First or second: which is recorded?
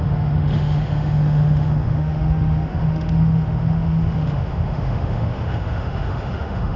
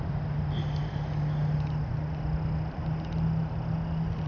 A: second